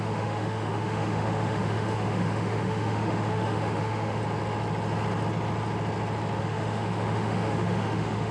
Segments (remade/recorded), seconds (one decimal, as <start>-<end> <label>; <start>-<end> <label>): 0.0-4.2 remade; 4.2-6.4 recorded; 6.4-8.3 remade